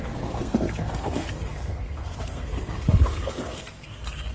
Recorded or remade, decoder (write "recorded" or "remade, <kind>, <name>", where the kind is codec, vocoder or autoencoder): remade, codec, SNAC